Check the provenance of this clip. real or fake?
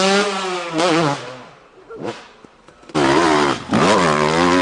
real